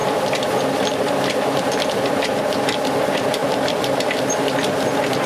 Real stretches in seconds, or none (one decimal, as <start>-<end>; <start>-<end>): 0.0-3.4; 4.3-5.3